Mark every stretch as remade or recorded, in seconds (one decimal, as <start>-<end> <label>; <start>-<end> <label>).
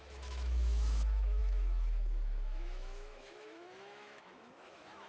0.0-5.1 remade